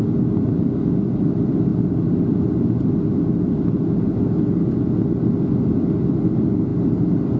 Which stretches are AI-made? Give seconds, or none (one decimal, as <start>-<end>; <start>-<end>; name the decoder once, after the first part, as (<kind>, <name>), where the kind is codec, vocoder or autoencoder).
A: none